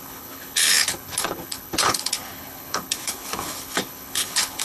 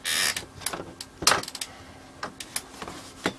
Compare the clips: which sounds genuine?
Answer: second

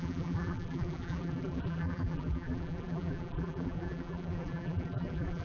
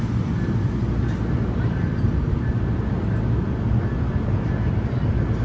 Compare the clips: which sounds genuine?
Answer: second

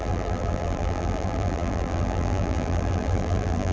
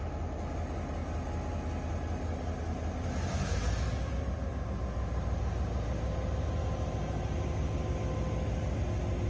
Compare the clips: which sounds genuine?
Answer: second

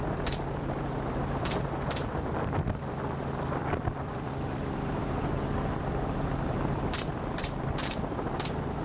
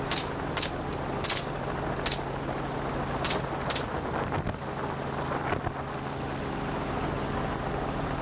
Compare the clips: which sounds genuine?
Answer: second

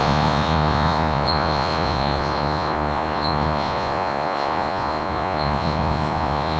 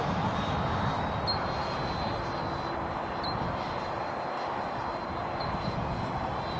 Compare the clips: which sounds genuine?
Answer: second